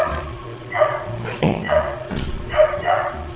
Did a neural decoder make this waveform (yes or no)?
yes